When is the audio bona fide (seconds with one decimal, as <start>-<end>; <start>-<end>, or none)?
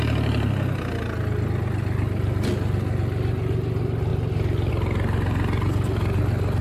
0.0-6.6